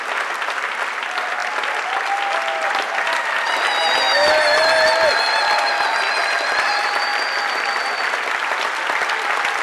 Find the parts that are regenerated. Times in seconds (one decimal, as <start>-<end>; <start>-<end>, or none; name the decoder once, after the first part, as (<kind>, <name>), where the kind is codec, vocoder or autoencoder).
none